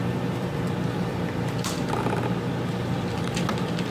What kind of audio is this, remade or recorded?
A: remade